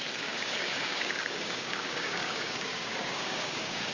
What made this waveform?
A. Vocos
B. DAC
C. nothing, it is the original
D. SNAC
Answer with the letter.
B